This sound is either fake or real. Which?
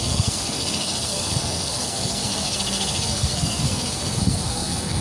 fake